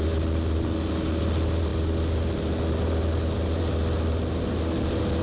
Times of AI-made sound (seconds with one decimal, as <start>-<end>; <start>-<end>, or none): none